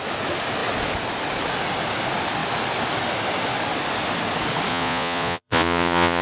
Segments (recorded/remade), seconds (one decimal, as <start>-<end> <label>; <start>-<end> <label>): 0.0-4.7 recorded; 4.7-6.2 remade